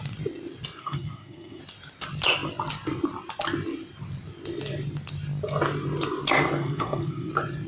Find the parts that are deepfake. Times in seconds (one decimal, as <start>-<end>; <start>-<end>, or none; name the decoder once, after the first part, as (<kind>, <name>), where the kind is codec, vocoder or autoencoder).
0.8-1.6 (codec, SNAC); 6.6-7.3